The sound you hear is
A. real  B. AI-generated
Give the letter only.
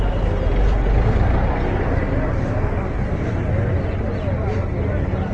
A